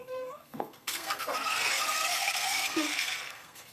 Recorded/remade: remade